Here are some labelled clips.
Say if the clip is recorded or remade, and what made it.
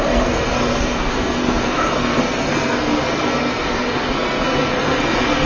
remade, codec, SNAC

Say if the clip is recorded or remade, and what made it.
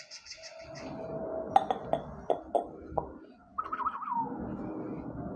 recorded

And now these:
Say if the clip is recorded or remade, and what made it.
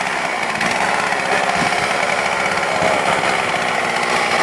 recorded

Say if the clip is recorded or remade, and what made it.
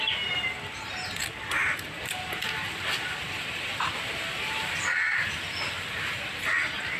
recorded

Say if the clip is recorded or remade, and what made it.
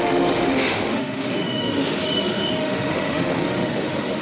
remade, autoencoder, DAC-VAE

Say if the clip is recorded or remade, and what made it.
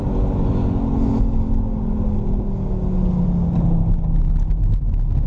recorded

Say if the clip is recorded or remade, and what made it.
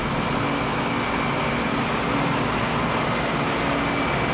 recorded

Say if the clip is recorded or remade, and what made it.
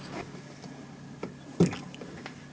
recorded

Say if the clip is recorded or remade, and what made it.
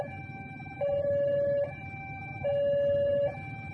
recorded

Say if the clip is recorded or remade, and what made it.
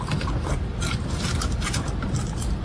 recorded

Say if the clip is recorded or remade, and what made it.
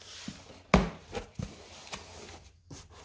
recorded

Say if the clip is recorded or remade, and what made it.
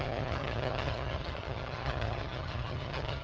remade, vocoder, HiFi-GAN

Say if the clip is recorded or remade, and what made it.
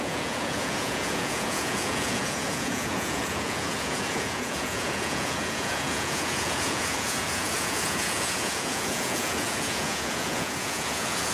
remade, vocoder, Vocos